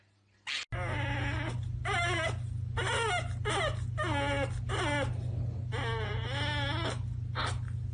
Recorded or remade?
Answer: recorded